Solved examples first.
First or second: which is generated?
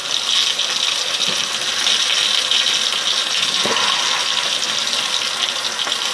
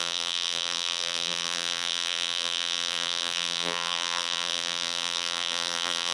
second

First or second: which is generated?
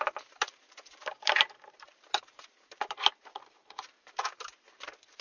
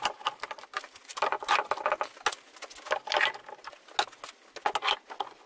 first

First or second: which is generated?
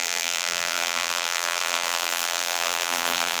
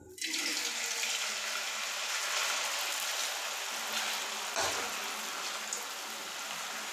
first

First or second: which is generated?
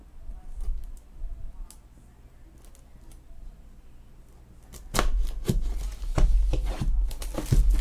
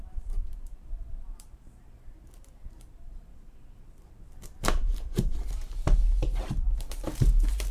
second